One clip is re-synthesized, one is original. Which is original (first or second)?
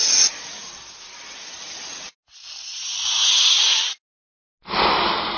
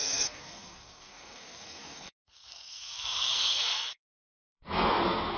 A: first